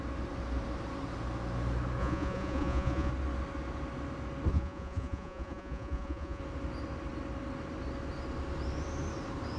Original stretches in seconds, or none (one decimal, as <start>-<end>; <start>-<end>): 0.0-2.0; 3.1-4.5; 6.4-9.6